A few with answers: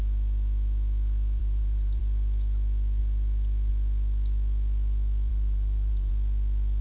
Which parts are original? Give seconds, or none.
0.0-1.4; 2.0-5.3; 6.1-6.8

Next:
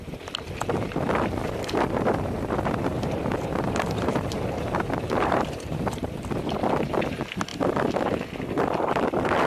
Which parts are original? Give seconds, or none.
0.0-1.4; 6.4-9.5

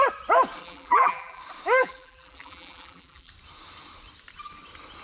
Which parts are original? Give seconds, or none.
0.0-0.6; 1.4-1.8; 3.3-5.0

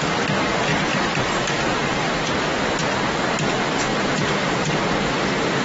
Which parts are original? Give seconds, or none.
0.0-0.7; 2.1-3.9; 4.7-5.6

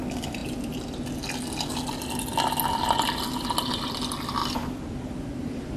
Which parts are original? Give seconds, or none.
0.0-4.4

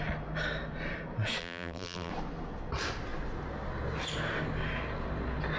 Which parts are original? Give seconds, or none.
0.0-1.4; 2.1-5.6